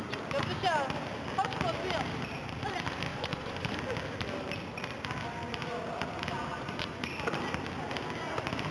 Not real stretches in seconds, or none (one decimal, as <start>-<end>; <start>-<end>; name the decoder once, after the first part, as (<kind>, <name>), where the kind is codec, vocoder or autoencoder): 3.1-3.7 (vocoder, Vocos); 6.5-7.1